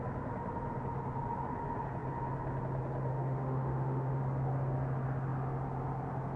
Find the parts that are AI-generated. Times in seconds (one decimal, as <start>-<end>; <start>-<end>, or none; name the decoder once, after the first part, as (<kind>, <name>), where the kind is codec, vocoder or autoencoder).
3.1-4.2 (autoencoder, DAC-VAE)